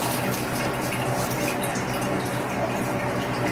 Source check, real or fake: real